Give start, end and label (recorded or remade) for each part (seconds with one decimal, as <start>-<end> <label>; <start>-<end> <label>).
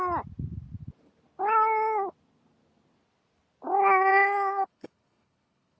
0.0-4.1 recorded; 4.1-5.8 remade